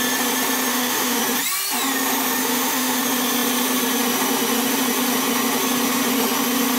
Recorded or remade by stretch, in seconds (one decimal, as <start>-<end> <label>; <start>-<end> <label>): 0.0-0.7 recorded; 0.7-1.2 remade; 1.2-2.4 recorded; 2.4-3.0 remade; 3.0-6.8 recorded